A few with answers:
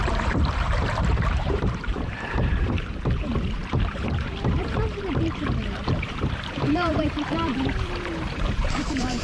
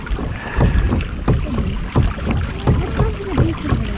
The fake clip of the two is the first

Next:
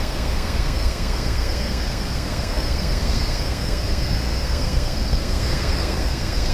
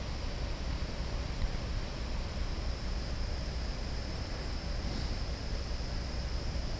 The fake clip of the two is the first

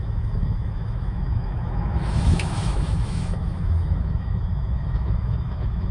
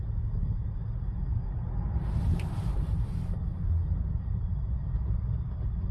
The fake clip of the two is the first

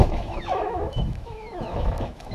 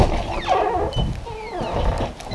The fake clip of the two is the first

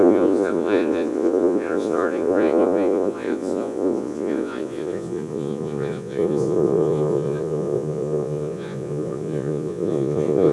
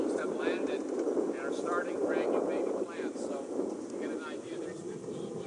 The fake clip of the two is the first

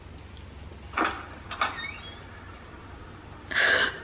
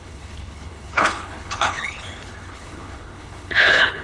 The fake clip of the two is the second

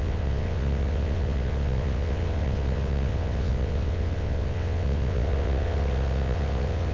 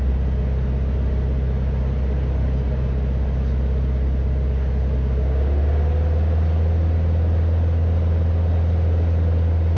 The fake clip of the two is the first